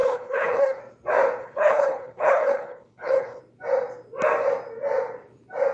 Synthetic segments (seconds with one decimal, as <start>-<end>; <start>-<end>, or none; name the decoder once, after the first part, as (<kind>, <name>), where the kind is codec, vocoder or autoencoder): 0.0-0.8 (codec, HILCodec); 1.4-3.4